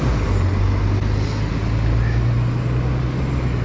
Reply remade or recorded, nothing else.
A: recorded